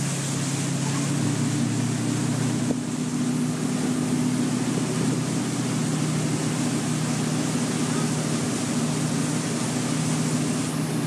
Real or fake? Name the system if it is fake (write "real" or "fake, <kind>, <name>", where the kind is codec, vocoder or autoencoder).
real